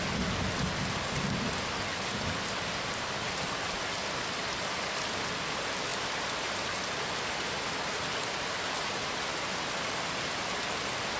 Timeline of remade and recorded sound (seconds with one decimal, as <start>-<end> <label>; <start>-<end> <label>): 0.0-11.2 recorded